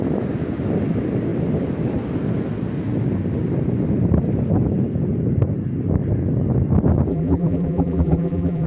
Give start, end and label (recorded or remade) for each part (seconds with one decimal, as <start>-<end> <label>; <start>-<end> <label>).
0.0-7.1 recorded; 7.1-8.7 remade